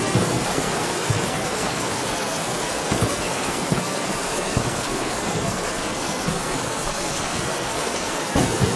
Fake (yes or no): yes